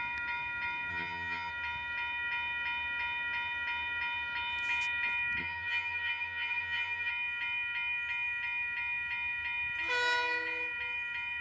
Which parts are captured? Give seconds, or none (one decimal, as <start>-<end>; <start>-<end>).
0.0-0.9; 1.5-5.4; 7.1-11.4